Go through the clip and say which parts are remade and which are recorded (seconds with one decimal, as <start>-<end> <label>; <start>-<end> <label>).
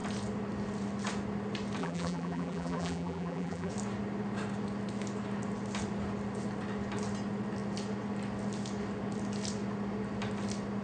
0.0-1.8 recorded; 1.8-3.7 remade; 3.7-10.8 recorded